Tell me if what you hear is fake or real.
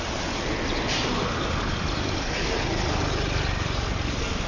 real